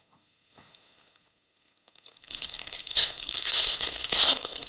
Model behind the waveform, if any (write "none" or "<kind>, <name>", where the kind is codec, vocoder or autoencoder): codec, SNAC